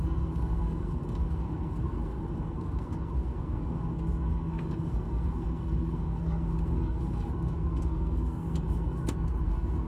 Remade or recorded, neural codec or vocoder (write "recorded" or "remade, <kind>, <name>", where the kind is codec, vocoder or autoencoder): remade, codec, SNAC